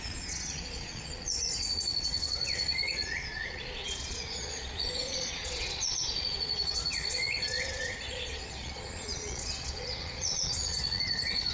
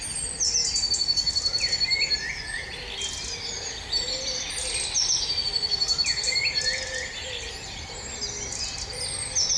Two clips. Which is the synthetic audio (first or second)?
first